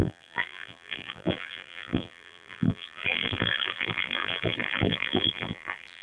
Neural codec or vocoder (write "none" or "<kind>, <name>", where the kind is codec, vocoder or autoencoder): vocoder, BigVGAN v2